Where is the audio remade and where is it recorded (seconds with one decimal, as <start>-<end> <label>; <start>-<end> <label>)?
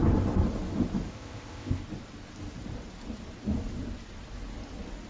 0.0-1.1 recorded; 1.1-1.8 remade; 1.8-5.1 recorded